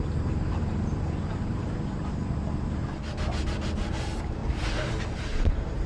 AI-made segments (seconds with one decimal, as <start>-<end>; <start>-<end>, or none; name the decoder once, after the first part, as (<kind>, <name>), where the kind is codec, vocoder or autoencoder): 0.0-2.8 (vocoder, BigVGAN v2); 3.5-4.4; 5.0-5.9